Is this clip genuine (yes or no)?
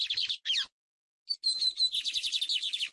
yes